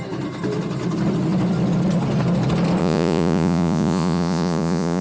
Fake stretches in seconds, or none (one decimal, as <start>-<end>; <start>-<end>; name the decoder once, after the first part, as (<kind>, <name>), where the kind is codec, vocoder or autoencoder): 2.8-5.0 (vocoder, Vocos)

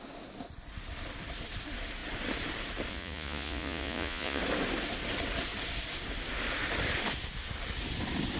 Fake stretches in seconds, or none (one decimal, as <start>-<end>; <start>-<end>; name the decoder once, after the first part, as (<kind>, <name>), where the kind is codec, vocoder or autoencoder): 2.9-4.4 (vocoder, Vocos)

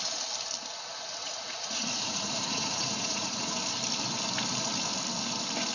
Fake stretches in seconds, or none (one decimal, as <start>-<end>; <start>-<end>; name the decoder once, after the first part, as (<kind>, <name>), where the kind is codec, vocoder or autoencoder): 1.2-3.5 (vocoder, Vocos)

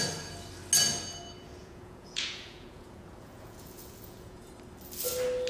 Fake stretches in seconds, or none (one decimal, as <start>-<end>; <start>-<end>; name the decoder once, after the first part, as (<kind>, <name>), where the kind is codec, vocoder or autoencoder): 1.6-4.5 (vocoder, Vocos)

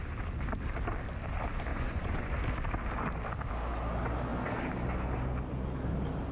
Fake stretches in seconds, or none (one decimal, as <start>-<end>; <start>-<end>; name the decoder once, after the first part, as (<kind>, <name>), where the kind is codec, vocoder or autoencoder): 1.7-2.3 (vocoder, Vocos)

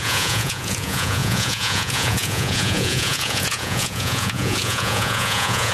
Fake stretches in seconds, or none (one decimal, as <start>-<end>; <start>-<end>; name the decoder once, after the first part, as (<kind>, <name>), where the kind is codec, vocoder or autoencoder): 0.0-5.7 (vocoder, Vocos)